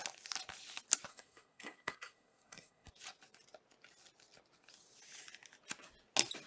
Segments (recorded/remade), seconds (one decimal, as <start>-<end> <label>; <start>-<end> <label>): 0.0-1.1 recorded; 1.1-2.9 remade; 2.9-6.5 recorded